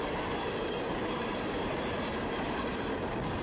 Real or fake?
real